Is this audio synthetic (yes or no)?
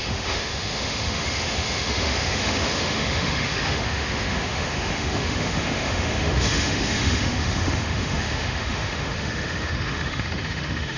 yes